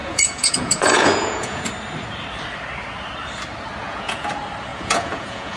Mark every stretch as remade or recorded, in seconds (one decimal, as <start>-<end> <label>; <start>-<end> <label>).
0.0-1.7 remade; 1.7-3.8 recorded; 3.8-4.3 remade; 4.3-4.7 recorded; 4.7-5.6 remade